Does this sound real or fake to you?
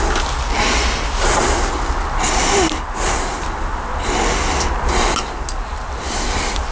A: real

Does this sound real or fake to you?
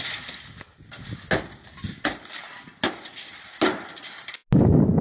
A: real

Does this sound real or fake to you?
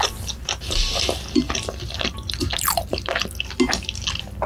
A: real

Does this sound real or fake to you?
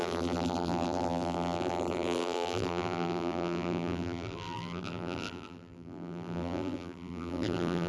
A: fake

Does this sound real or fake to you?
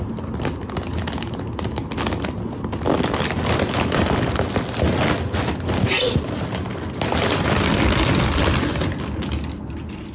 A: real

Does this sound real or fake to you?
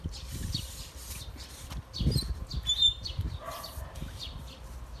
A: fake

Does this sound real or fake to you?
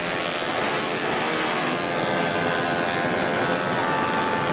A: real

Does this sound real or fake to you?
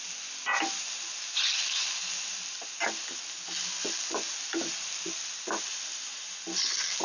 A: real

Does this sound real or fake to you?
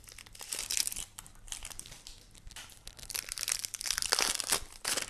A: fake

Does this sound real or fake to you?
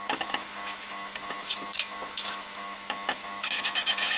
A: fake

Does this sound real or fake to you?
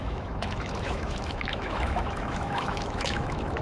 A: fake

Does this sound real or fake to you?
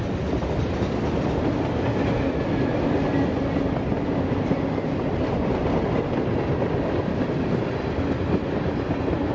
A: real